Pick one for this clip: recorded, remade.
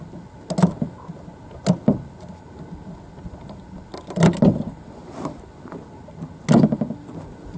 recorded